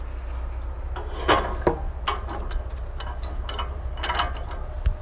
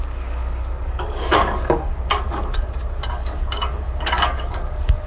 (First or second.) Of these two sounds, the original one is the first